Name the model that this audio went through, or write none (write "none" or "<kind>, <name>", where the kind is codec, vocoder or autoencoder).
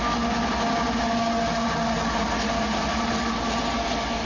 none